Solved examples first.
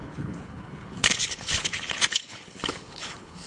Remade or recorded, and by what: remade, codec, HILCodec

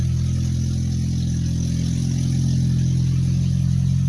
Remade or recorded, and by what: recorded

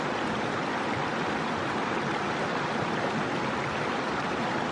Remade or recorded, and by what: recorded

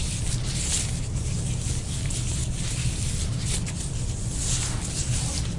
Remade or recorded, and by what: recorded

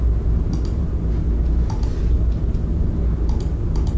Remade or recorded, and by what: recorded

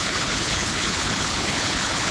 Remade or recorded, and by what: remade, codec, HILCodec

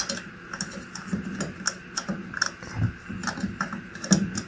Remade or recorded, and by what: recorded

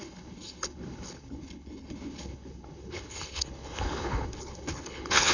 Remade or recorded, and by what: remade, codec, HILCodec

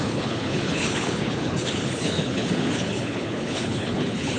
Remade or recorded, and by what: remade, codec, HILCodec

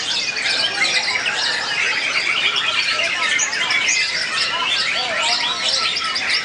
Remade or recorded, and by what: recorded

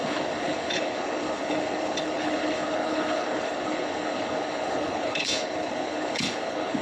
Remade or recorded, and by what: remade, codec, HILCodec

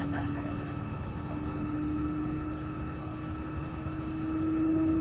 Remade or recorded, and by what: remade, codec, HILCodec